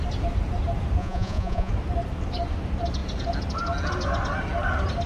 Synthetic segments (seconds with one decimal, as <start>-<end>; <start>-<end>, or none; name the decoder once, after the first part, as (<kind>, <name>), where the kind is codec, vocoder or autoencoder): 1.0-1.7 (vocoder, Vocos)